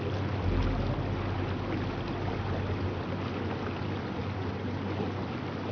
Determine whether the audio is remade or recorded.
recorded